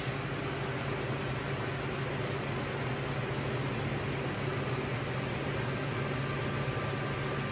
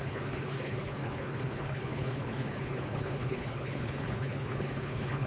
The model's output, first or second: second